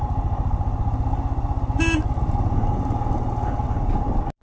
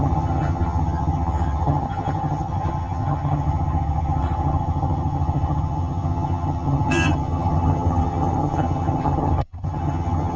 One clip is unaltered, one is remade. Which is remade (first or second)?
second